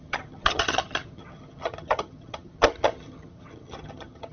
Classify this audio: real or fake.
fake